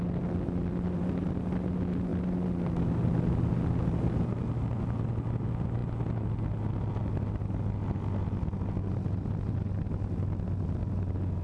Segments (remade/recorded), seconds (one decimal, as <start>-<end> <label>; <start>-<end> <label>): 0.0-11.4 recorded